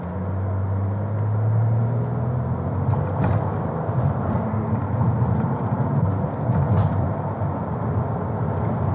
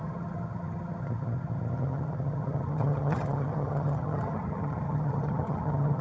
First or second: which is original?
first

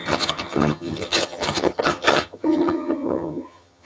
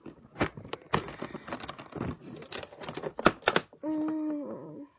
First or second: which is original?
second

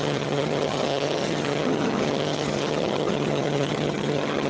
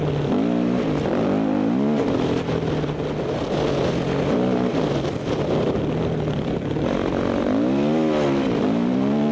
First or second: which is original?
second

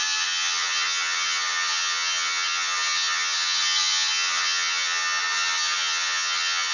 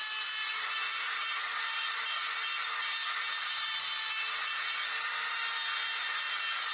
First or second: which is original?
second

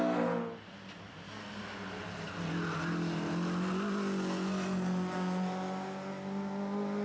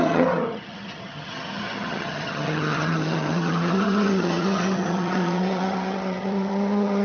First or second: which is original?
first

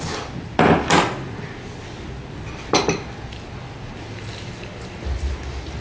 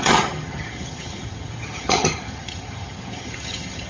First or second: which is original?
first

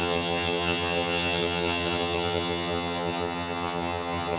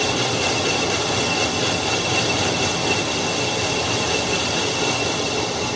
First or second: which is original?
second